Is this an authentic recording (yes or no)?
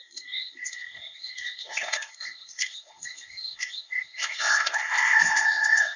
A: no